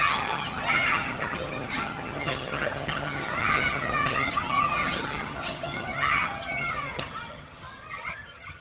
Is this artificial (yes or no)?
yes